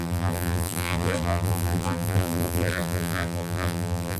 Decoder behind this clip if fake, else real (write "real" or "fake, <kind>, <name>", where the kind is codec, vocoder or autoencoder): fake, vocoder, BigVGAN v2